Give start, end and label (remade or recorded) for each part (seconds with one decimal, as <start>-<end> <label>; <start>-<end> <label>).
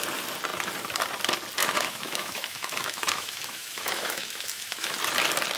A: 0.0-1.6 recorded; 1.6-5.0 remade; 5.0-5.6 recorded